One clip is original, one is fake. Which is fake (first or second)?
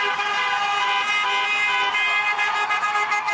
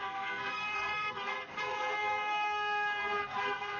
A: second